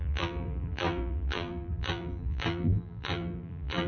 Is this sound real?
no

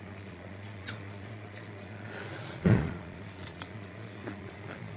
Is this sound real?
no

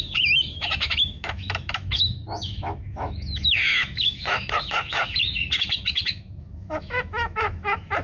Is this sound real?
no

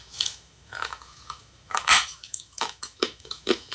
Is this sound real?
no